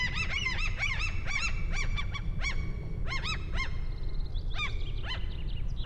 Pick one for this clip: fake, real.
real